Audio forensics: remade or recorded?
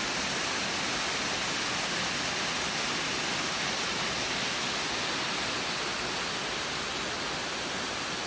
recorded